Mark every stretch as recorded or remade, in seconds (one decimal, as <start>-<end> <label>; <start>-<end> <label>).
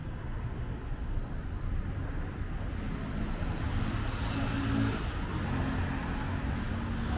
0.0-7.2 recorded